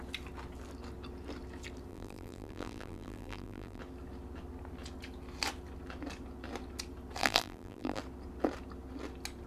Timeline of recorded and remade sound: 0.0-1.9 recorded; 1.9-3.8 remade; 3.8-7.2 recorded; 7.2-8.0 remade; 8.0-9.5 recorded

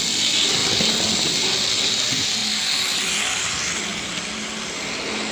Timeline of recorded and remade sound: 0.0-5.3 recorded